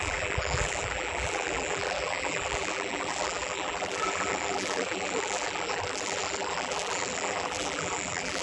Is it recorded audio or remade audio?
remade